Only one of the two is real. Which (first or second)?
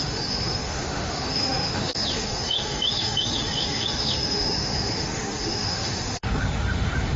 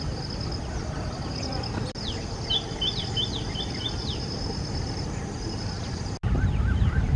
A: second